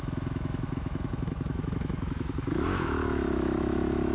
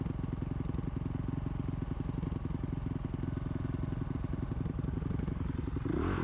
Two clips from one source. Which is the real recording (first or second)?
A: second